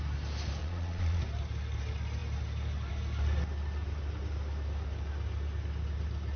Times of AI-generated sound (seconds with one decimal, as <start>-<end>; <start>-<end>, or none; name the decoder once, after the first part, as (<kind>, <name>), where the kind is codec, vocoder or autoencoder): 0.6-1.2 (vocoder, Vocos)